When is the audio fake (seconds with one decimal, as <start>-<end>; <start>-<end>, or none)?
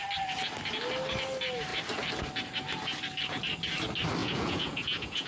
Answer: 4.2-5.3